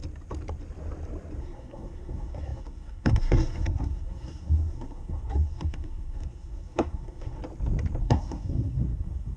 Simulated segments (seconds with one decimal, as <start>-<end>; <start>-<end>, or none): 1.4-7.4; 8.0-9.4